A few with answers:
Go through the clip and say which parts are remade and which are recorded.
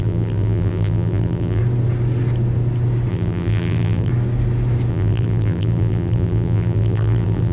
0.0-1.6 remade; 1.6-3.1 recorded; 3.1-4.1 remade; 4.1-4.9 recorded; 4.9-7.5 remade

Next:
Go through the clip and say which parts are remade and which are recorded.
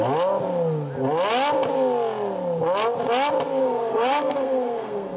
0.0-3.6 recorded; 3.6-5.2 remade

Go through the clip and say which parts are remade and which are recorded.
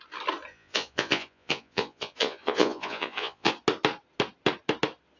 0.0-0.5 recorded; 0.5-3.5 remade; 3.5-5.2 recorded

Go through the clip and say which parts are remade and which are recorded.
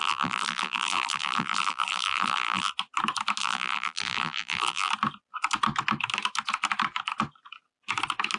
0.0-2.7 remade; 2.7-3.4 recorded; 3.4-4.9 remade; 4.9-8.4 recorded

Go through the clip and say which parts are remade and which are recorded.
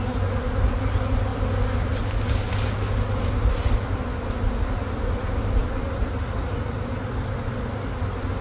0.0-8.4 recorded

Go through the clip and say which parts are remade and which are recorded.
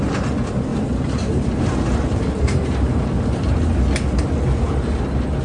0.0-0.7 recorded; 0.7-3.7 remade; 3.7-5.4 recorded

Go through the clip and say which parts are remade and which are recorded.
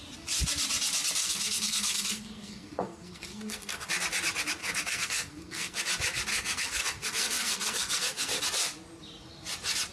0.0-1.2 recorded; 1.2-3.9 remade; 3.9-4.6 recorded; 4.6-5.8 remade; 5.8-6.3 recorded; 6.3-8.4 remade; 8.4-9.9 recorded